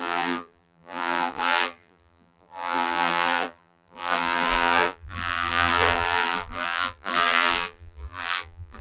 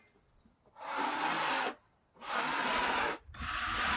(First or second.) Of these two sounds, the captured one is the second